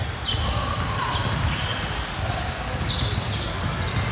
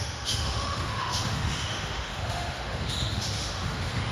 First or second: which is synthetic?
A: second